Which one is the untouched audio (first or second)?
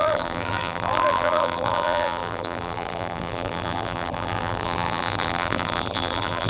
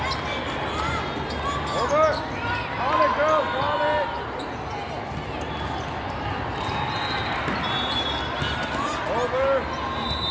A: second